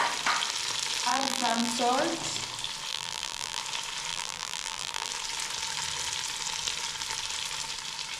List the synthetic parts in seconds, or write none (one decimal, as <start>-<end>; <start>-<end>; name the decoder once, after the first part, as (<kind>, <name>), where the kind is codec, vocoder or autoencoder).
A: 1.1-1.7 (vocoder, BigVGAN v2); 2.9-3.6; 4.1-5.1